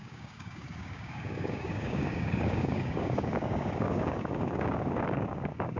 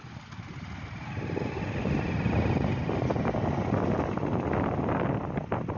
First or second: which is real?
second